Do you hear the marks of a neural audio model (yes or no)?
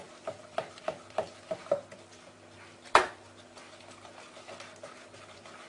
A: yes